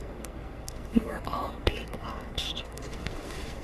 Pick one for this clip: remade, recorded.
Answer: remade